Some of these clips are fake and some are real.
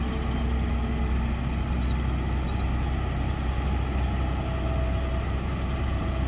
real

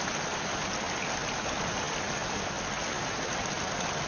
real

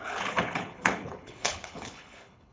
fake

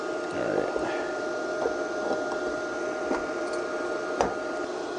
real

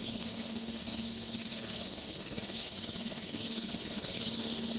fake